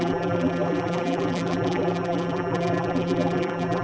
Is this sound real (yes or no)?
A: no